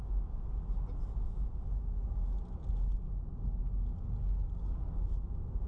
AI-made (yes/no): no